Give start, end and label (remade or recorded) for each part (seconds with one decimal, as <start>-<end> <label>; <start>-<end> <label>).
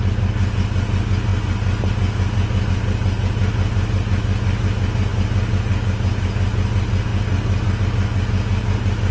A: 0.0-9.1 recorded